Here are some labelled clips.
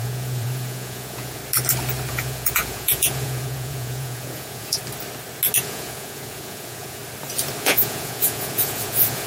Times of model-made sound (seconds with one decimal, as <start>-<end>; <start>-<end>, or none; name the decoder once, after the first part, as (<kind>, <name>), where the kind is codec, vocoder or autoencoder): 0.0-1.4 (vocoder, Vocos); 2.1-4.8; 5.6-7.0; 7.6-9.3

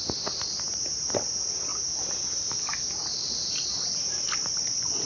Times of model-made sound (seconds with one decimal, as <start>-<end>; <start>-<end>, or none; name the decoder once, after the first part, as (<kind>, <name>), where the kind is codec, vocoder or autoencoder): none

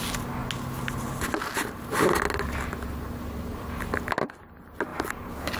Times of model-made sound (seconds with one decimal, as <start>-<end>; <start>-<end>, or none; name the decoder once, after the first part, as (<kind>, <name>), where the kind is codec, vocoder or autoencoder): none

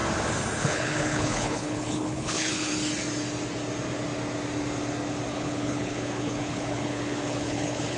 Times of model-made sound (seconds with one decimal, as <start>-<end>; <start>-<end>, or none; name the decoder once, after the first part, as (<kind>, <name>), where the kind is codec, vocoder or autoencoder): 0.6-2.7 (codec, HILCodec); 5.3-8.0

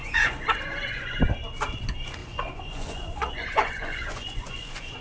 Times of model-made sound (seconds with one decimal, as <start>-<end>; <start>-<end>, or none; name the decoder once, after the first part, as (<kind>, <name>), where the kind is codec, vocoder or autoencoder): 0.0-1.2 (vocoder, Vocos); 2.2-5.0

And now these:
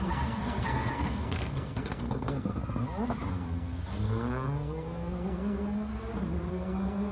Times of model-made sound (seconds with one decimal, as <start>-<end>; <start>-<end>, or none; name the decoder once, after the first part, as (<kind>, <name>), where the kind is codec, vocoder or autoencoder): 0.0-2.6 (codec, SNAC); 3.3-5.9; 6.5-7.1

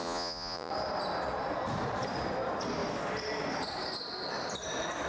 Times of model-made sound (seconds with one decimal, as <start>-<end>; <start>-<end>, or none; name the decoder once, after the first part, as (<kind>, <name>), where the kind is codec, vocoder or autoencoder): 0.0-0.7 (vocoder, Vocos)

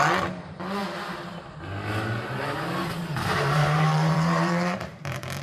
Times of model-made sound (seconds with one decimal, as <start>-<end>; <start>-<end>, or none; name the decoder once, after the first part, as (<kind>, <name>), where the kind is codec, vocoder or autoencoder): 3.0-5.0 (vocoder, BigVGAN v2)